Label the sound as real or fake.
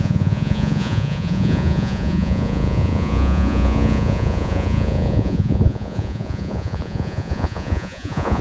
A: fake